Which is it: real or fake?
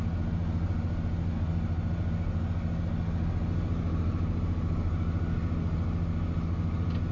real